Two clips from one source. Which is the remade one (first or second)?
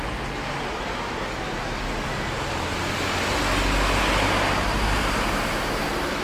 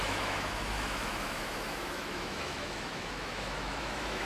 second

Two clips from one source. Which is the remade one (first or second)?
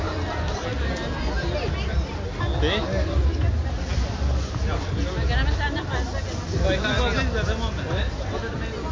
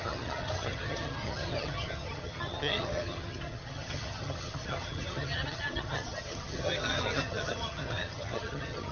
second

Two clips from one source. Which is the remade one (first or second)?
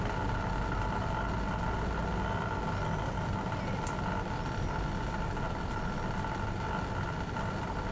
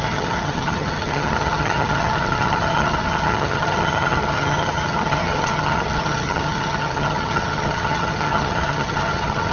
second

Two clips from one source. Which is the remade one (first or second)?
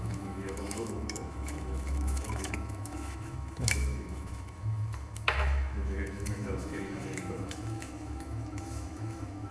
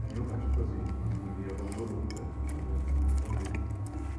first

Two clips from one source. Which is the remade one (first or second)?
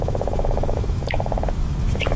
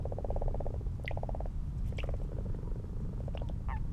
first